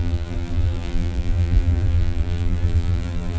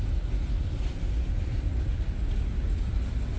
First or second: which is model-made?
first